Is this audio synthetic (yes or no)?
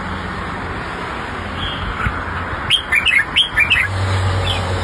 no